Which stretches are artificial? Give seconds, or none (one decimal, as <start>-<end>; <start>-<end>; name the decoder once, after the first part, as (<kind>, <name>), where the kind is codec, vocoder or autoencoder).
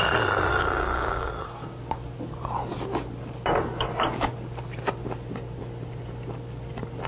0.5-1.8 (codec, DAC)